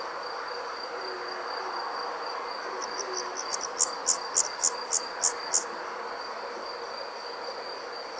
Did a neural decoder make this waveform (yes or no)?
no